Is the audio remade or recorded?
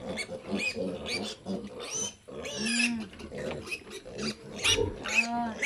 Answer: recorded